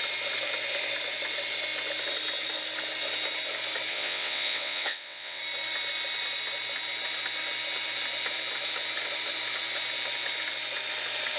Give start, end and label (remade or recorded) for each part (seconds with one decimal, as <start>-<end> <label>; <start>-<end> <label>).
0.0-3.9 recorded; 3.9-5.4 remade; 5.4-11.4 recorded